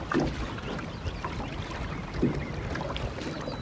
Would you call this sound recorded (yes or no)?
yes